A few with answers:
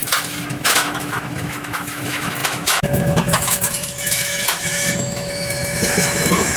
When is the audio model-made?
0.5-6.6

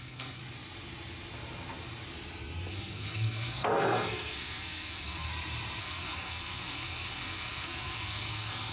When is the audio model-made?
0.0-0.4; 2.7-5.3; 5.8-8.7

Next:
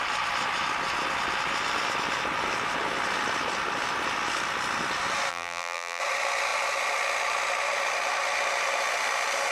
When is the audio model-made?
5.3-6.0